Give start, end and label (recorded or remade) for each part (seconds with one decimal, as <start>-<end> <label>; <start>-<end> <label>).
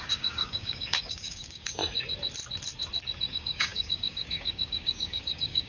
0.0-1.8 remade; 1.8-3.3 recorded; 3.3-5.7 remade